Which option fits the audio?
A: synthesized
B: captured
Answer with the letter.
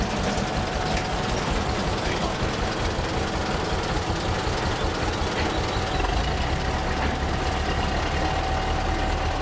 B